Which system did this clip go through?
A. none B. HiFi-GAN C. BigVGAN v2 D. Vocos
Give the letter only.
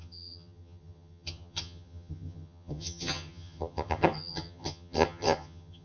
B